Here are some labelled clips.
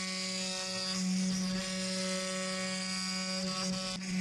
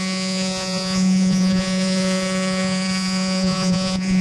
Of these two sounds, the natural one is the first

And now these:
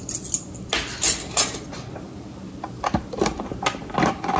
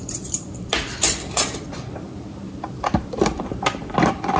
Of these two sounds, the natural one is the first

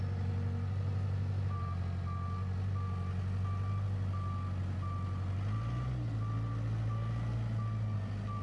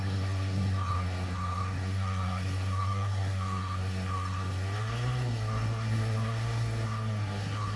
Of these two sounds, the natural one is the first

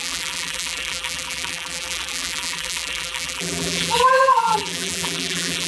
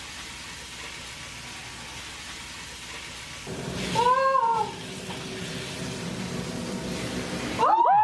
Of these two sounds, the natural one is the second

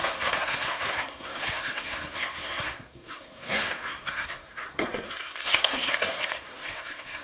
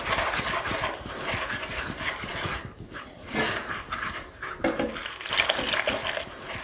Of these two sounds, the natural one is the second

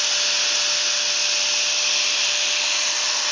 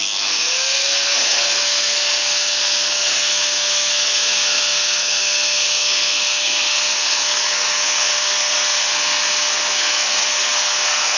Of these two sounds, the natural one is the first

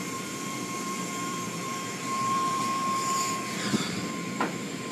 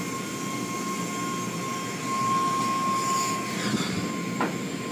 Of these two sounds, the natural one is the second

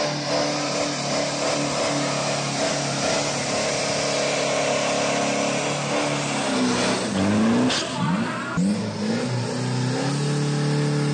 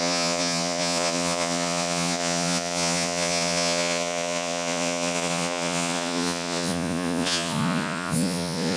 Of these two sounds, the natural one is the first